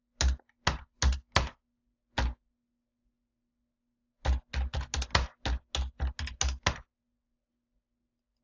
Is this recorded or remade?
recorded